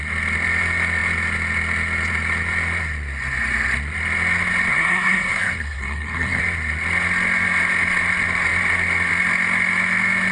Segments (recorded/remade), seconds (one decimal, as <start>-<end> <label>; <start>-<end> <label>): 0.0-4.7 recorded; 4.7-6.4 remade; 6.4-10.3 recorded